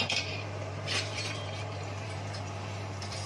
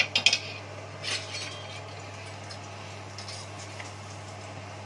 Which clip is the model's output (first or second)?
first